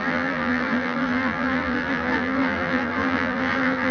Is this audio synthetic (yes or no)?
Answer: yes